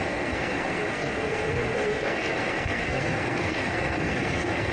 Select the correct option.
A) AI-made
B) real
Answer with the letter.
A